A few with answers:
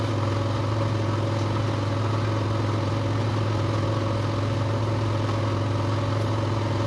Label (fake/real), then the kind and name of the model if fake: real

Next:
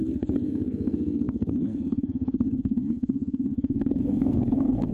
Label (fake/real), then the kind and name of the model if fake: fake, codec, SNAC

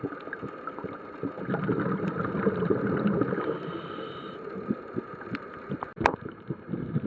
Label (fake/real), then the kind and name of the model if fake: real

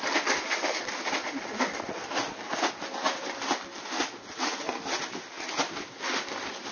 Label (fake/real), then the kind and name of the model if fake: real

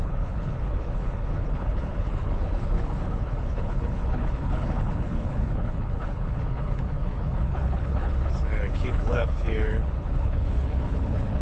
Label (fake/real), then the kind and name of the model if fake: fake, codec, HILCodec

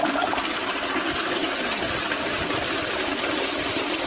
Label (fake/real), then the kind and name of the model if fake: real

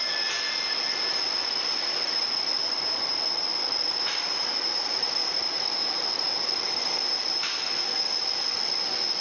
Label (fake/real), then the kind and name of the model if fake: real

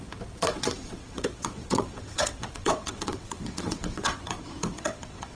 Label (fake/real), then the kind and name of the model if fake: fake, vocoder, WaveNeXt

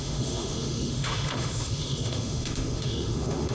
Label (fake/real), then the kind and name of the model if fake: fake, autoencoder, DAC-VAE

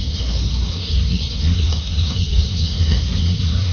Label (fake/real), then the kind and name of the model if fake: fake, codec, SNAC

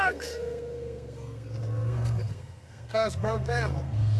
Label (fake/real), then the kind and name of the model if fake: fake, codec, SNAC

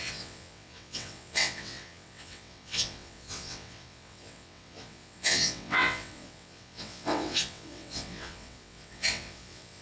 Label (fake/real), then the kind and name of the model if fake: fake, vocoder, WaveNeXt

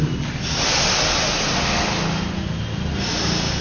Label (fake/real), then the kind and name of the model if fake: real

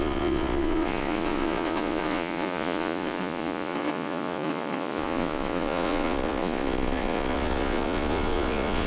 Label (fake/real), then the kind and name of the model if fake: fake, vocoder, Vocos